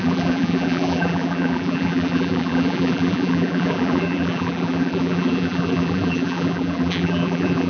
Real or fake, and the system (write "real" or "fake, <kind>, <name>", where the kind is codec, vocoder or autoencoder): fake, vocoder, BigVGAN v2